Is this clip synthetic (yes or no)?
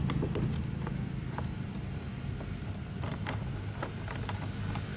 no